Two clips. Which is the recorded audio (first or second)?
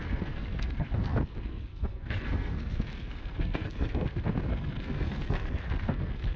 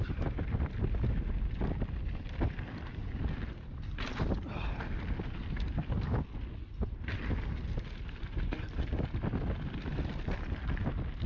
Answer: second